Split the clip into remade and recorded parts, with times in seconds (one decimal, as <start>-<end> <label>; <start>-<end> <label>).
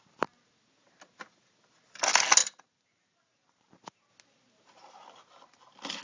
0.0-2.4 recorded; 2.4-4.1 remade; 4.1-6.0 recorded